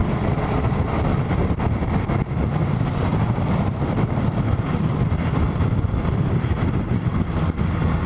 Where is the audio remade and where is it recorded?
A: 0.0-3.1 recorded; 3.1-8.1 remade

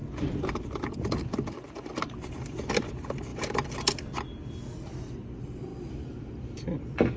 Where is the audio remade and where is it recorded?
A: 0.0-7.2 recorded

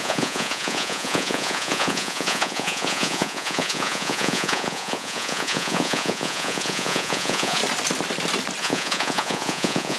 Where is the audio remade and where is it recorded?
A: 0.0-7.6 remade; 7.6-8.6 recorded; 8.6-10.0 remade

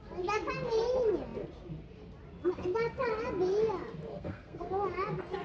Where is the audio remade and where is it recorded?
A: 0.0-4.1 recorded; 4.1-4.7 remade; 4.7-5.4 recorded

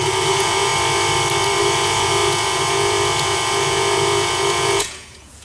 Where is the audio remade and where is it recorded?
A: 0.0-0.7 remade; 0.7-1.6 recorded; 1.6-5.4 remade

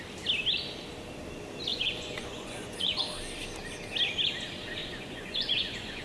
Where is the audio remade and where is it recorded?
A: 0.0-1.7 recorded; 1.7-3.0 remade; 3.0-4.8 recorded; 4.8-6.0 remade